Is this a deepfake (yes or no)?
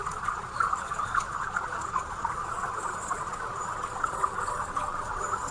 yes